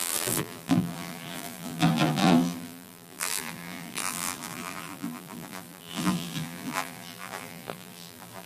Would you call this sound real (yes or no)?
no